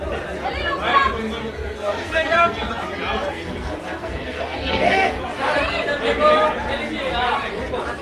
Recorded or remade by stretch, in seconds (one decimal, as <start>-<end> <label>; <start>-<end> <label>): 0.0-1.4 recorded; 1.4-2.7 remade; 2.7-3.3 recorded; 3.3-5.2 remade; 5.2-8.0 recorded